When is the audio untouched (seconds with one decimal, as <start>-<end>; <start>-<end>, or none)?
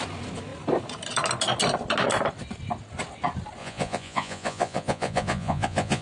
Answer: 0.0-3.6